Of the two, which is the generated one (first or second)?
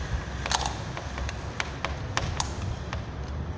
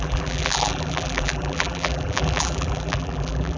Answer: second